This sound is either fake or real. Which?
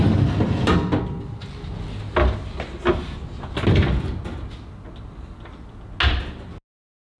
real